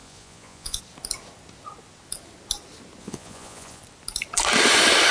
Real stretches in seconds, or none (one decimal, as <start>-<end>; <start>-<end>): 0.8-3.0; 3.8-5.1